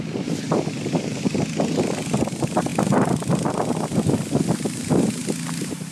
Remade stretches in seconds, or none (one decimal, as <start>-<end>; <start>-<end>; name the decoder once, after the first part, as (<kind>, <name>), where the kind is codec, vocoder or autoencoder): none

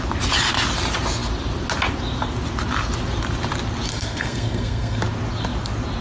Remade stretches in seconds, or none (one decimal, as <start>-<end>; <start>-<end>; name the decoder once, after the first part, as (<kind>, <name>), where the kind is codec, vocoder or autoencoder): 3.9-5.0 (codec, SNAC)

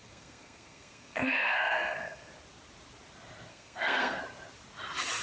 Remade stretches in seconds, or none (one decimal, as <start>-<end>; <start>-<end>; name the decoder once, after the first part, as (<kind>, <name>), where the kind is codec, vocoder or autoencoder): 0.0-2.3 (codec, SNAC); 3.5-4.2